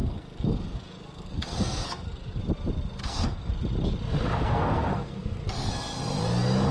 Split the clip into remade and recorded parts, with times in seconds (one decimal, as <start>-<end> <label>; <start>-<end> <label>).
0.0-2.4 remade; 2.4-3.0 recorded; 3.0-3.5 remade; 3.5-4.4 recorded; 4.4-5.7 remade; 5.7-6.7 recorded